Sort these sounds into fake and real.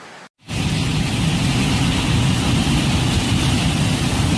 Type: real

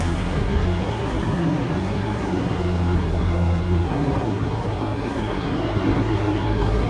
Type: fake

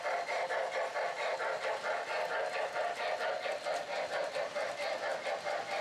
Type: real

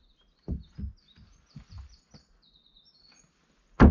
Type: real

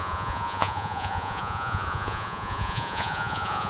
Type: fake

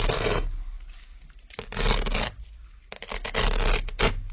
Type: real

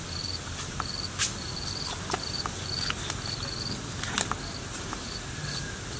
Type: real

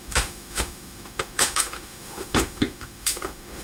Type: fake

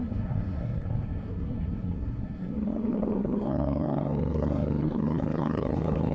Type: fake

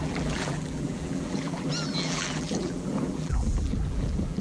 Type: fake